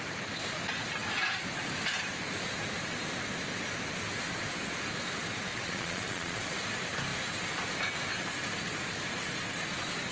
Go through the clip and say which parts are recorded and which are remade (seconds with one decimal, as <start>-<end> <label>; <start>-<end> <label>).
0.0-5.5 recorded; 5.5-6.4 remade; 6.4-10.1 recorded